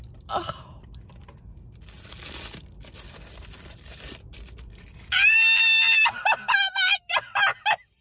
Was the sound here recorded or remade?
recorded